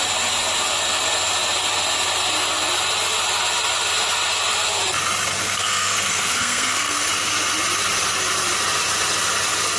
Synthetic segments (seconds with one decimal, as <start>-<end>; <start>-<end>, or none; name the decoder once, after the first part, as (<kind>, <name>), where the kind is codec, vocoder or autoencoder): 5.4-7.1 (codec, SNAC)